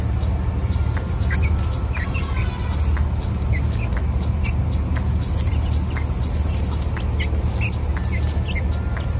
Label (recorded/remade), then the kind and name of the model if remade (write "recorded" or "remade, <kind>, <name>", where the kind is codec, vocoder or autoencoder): recorded